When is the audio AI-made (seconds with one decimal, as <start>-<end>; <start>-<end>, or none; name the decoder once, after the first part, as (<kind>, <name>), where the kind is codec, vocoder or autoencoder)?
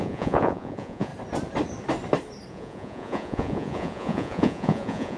0.0-1.1 (vocoder, Vocos); 2.5-5.2